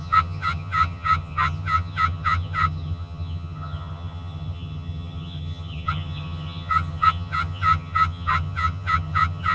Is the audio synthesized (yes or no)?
yes